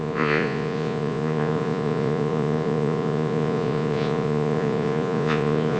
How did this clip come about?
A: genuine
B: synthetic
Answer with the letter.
B